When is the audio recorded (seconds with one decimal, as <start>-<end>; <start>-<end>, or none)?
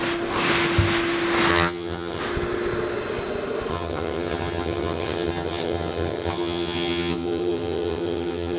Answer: 0.0-1.5; 2.2-3.7